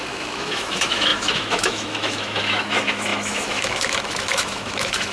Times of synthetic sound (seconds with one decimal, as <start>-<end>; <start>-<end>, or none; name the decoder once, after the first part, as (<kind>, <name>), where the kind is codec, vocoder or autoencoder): 0.0-5.1 (autoencoder, DAC-VAE)